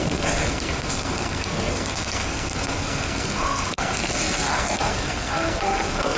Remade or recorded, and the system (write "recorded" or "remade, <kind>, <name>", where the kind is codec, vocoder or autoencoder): remade, codec, SNAC